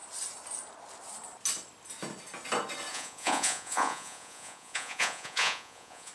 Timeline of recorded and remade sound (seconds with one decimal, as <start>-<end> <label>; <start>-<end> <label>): 0.0-2.9 recorded; 2.9-6.1 remade